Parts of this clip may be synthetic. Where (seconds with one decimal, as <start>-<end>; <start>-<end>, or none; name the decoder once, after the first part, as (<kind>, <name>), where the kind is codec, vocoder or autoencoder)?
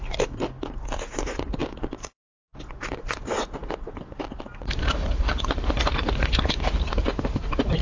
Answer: none